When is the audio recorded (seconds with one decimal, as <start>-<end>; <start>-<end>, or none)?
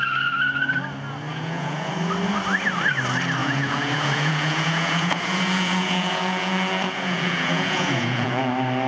0.0-1.3; 1.9-3.4; 8.5-8.9